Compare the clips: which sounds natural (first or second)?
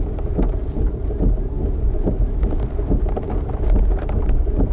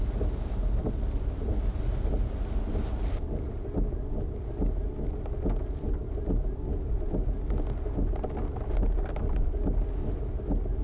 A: second